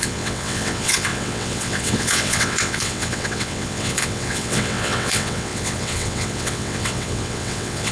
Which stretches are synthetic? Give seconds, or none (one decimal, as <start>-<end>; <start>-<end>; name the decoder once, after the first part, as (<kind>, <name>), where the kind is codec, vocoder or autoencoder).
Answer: 0.0-7.9 (vocoder, WaveNeXt)